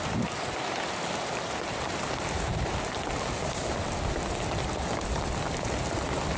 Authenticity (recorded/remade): recorded